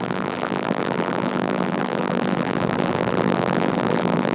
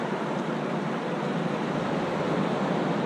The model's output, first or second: first